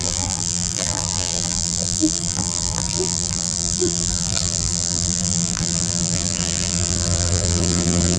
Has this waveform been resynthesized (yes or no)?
yes